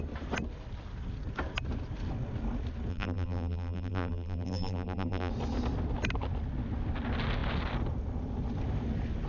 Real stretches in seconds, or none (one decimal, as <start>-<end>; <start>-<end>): 0.0-2.9; 5.3-9.3